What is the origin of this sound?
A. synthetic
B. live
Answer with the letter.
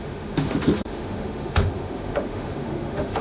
A